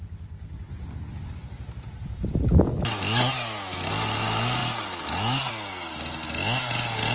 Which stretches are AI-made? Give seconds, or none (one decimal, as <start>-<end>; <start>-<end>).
none